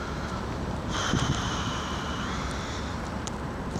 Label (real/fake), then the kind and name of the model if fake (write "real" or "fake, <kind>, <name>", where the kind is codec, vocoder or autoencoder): fake, vocoder, BigVGAN v2